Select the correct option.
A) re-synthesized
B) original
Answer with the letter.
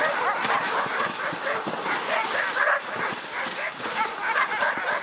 B